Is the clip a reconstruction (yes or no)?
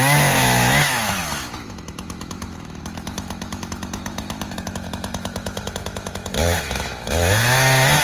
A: yes